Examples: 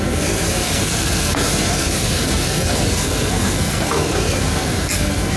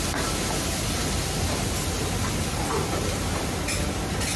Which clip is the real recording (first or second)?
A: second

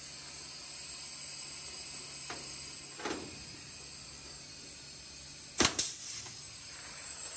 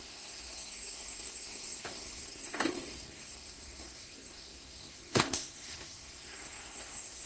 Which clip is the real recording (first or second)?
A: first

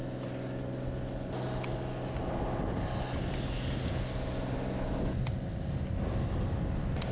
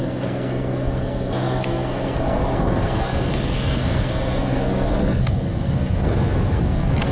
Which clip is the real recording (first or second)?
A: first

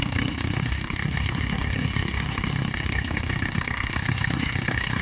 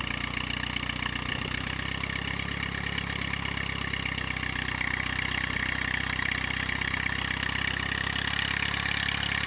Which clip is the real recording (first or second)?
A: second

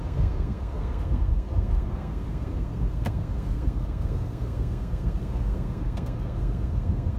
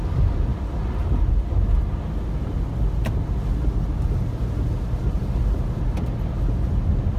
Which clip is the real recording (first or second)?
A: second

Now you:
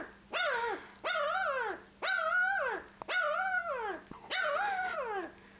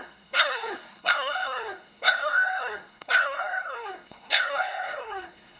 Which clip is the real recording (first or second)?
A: first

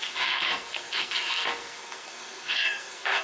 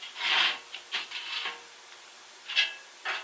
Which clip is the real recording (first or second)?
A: second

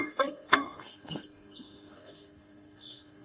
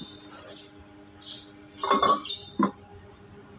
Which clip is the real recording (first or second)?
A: second